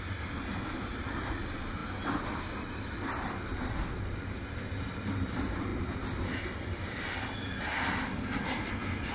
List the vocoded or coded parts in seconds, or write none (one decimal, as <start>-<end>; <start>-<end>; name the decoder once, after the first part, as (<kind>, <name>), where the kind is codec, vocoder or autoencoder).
none